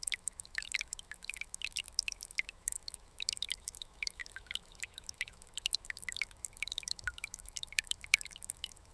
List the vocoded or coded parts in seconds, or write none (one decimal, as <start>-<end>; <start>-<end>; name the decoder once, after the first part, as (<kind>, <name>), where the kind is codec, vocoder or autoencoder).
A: 0.0-8.9 (autoencoder, DAC-VAE)